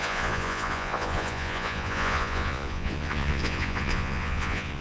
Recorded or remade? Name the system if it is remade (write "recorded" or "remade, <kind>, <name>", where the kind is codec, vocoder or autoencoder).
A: remade, vocoder, Vocos